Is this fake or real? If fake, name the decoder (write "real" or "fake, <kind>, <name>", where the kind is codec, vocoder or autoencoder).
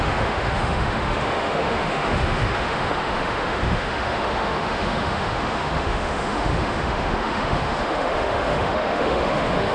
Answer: fake, autoencoder, DAC-VAE